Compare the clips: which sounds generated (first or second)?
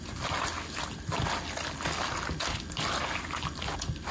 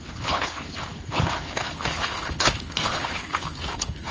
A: second